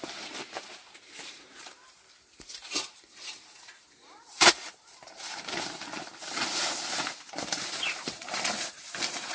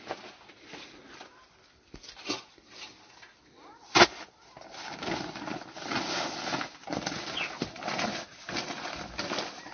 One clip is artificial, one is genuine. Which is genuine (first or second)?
second